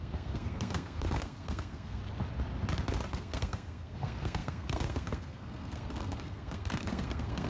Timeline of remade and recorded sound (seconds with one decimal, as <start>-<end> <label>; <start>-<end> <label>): 0.0-2.0 remade; 2.0-3.1 recorded; 3.1-7.5 remade